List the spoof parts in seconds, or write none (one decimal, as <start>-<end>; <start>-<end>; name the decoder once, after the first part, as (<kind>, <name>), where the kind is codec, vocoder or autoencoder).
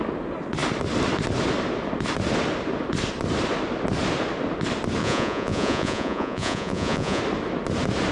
5.0-7.2 (vocoder, Vocos)